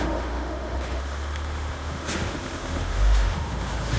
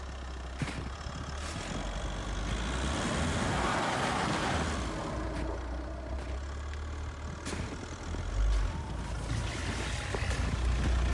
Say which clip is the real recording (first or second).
second